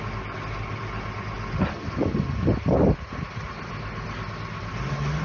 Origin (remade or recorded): recorded